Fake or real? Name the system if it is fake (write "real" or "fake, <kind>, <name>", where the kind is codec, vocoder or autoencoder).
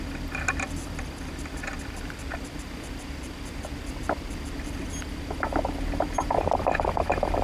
real